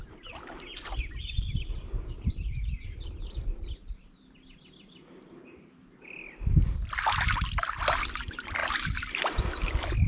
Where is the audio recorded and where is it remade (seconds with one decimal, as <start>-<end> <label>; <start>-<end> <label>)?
0.0-1.1 recorded; 1.1-10.1 remade